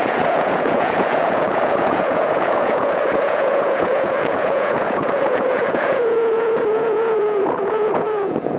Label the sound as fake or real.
fake